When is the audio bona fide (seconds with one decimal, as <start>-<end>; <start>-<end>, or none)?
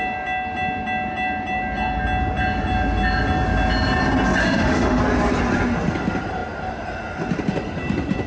0.0-4.4; 5.0-8.3